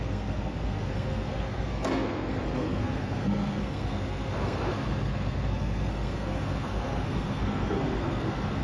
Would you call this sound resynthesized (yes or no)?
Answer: yes